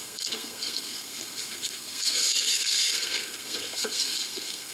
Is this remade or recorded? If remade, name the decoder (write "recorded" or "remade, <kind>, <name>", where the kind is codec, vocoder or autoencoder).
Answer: remade, codec, SNAC